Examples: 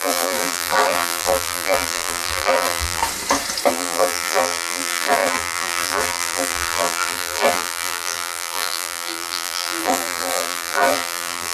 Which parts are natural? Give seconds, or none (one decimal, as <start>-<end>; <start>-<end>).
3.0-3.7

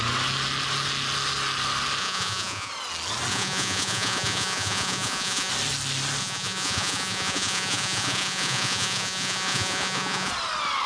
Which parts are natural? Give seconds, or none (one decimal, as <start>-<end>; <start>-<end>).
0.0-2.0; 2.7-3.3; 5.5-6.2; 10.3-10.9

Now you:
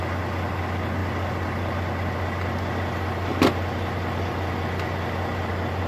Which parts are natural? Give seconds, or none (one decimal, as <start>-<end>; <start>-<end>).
0.0-5.9

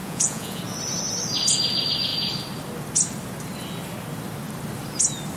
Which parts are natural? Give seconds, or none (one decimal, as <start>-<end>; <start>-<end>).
0.6-5.4